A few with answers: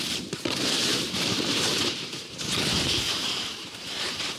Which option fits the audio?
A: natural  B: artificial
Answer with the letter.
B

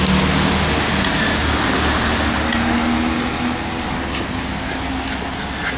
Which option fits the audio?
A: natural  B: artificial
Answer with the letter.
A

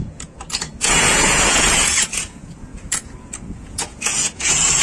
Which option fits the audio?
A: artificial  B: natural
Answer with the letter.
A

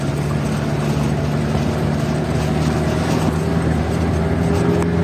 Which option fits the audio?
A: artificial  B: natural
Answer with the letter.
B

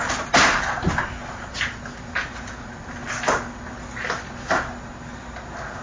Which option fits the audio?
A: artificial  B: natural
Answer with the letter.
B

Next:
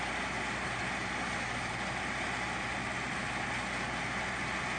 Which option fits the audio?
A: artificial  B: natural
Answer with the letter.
B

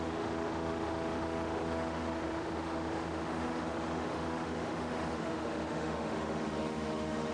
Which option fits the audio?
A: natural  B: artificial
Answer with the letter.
B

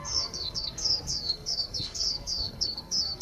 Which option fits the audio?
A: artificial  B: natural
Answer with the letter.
A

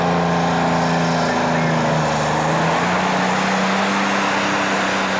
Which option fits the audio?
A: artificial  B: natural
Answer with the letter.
B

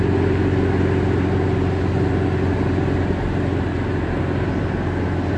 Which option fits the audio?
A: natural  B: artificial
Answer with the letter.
A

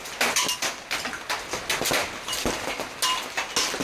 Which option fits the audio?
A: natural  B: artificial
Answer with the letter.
A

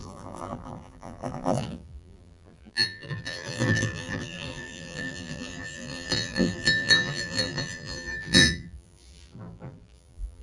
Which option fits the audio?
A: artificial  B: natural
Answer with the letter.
A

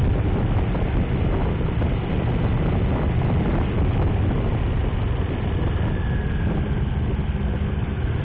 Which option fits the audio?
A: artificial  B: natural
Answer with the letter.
B